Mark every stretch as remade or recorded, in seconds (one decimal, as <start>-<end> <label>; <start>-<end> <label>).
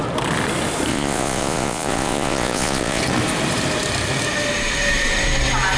0.0-0.9 recorded; 0.9-3.0 remade; 3.0-5.8 recorded